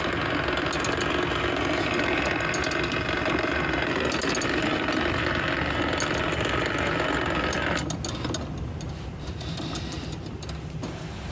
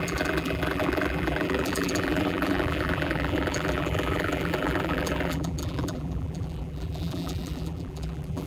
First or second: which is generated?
second